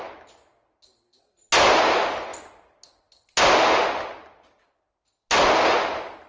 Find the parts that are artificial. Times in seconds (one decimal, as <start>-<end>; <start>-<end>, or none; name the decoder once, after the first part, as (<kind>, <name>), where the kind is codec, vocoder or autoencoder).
none